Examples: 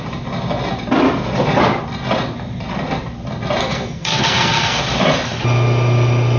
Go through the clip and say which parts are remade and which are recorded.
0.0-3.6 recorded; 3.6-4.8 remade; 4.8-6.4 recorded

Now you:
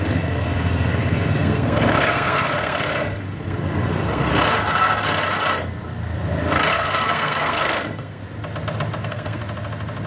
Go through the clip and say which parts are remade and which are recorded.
0.0-4.2 remade; 4.2-6.7 recorded; 6.7-8.2 remade; 8.2-9.0 recorded; 9.0-9.4 remade; 9.4-10.1 recorded

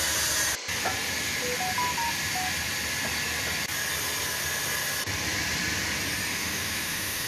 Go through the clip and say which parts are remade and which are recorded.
0.0-6.3 recorded; 6.3-7.3 remade

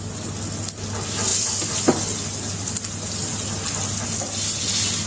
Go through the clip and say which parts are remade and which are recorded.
0.0-5.1 recorded

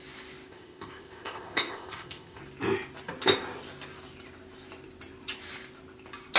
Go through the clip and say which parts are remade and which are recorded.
0.0-0.5 recorded; 0.5-2.4 remade; 2.4-6.4 recorded